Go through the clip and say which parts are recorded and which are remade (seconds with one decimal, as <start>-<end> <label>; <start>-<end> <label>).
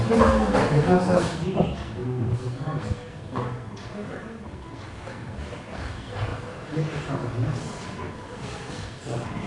0.0-9.5 remade